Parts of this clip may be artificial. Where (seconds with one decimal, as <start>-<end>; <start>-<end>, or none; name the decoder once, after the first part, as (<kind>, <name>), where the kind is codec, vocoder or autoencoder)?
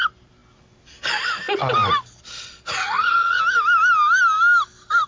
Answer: 2.8-3.4 (vocoder, HiFi-GAN)